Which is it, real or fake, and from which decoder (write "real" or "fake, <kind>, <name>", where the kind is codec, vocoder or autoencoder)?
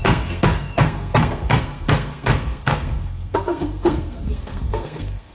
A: fake, codec, SNAC